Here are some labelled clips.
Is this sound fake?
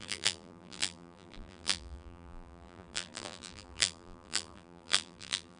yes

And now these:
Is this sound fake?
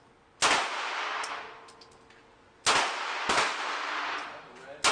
no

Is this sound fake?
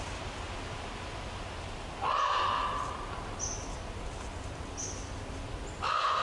yes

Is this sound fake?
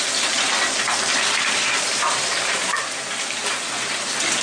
no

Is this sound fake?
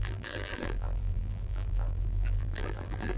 yes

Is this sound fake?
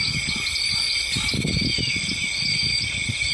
no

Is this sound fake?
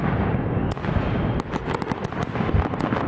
no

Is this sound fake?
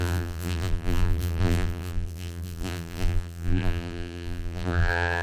yes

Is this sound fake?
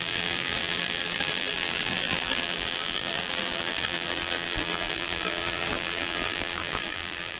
yes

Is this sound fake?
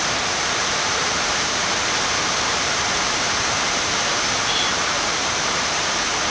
yes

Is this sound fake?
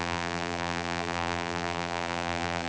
yes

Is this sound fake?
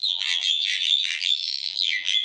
yes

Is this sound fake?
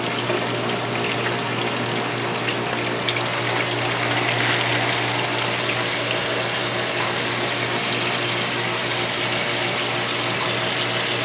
no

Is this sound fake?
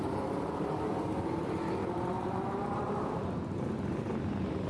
yes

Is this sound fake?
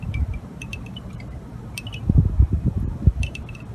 yes